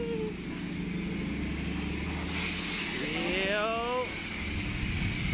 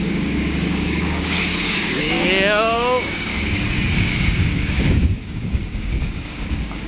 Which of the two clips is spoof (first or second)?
second